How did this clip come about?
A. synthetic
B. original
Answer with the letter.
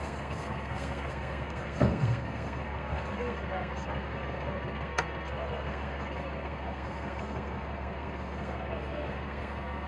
A